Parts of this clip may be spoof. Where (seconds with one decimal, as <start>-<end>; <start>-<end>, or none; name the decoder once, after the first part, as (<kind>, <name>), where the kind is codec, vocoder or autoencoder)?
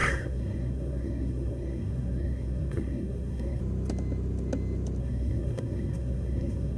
0.0-3.6 (codec, SNAC); 5.0-6.8